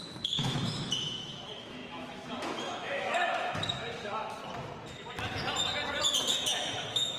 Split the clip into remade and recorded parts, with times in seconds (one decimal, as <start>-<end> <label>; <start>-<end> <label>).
0.0-4.4 remade; 4.4-6.2 recorded; 6.2-7.2 remade